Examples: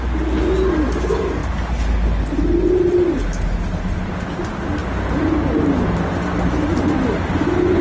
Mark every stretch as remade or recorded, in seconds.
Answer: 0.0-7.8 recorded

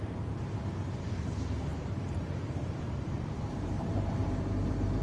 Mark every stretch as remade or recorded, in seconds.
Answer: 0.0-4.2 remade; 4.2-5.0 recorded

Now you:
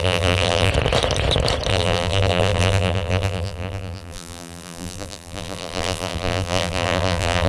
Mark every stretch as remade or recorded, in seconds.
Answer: 0.0-0.7 remade; 0.7-1.7 recorded; 1.7-7.5 remade

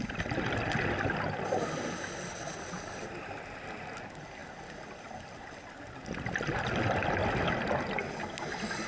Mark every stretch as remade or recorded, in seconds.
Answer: 0.0-4.4 recorded; 4.4-7.4 remade; 7.4-8.9 recorded

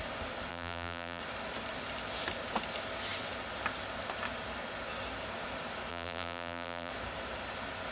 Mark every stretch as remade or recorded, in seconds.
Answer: 0.0-0.5 recorded; 0.5-1.2 remade; 1.2-5.9 recorded; 5.9-6.9 remade; 6.9-7.9 recorded

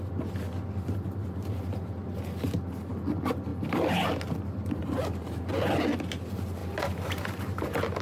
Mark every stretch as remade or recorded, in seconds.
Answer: 0.0-3.5 recorded; 3.5-4.2 remade; 4.2-4.8 recorded; 4.8-5.4 remade; 5.4-6.6 recorded; 6.6-8.0 remade